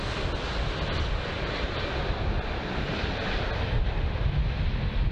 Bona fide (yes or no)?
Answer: yes